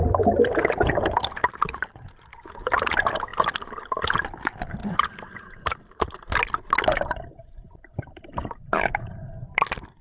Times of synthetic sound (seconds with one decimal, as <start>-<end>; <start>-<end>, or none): 1.4-3.3; 4.3-10.0